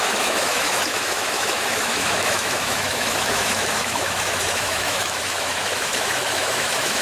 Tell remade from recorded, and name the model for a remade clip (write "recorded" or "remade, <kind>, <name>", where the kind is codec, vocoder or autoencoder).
remade, autoencoder, DAC-VAE